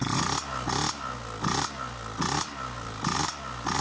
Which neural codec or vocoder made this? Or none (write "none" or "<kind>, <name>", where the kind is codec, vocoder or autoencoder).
none